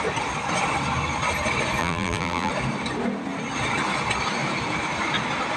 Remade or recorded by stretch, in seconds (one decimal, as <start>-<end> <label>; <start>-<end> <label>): 0.0-1.8 recorded; 1.8-2.5 remade; 2.5-5.6 recorded